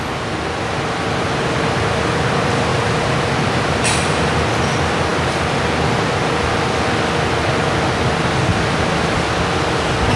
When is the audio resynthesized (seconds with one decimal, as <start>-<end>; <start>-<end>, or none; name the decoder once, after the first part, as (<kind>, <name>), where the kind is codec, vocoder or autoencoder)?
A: 2.7-4.4 (vocoder, BigVGAN v2); 8.5-9.3